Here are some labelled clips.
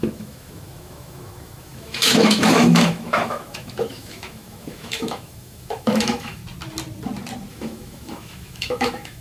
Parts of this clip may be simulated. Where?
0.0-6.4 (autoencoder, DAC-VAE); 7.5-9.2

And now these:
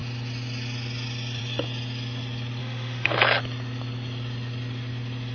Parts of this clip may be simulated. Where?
2.6-3.2 (autoencoder, DAC-VAE)

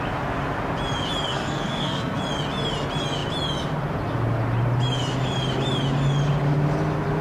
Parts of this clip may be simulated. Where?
1.3-2.2 (codec, SNAC)

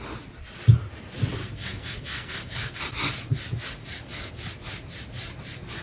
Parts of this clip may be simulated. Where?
1.4-2.8 (codec, SNAC); 3.8-4.3

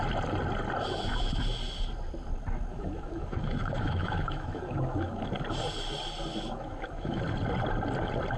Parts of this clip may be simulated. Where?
2.7-5.3 (autoencoder, DAC-VAE); 6.3-7.2

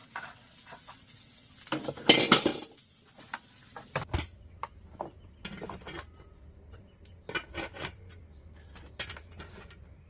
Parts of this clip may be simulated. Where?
0.0-1.5 (vocoder, WaveNeXt)

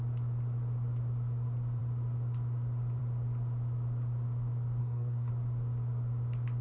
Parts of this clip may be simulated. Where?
4.8-5.3 (codec, SNAC)